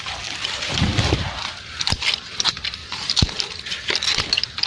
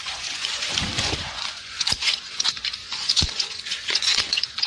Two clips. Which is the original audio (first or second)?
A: first